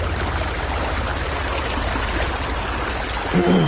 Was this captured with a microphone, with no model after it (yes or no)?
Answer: yes